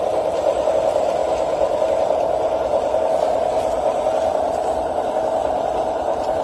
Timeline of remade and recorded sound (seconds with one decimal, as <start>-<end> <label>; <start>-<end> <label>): 0.0-1.2 remade; 1.2-5.0 recorded; 5.0-6.4 remade